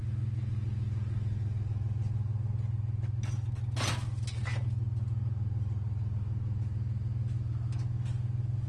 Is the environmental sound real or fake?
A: real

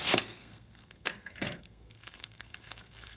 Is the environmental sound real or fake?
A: fake